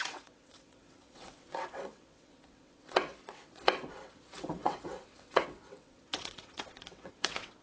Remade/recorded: remade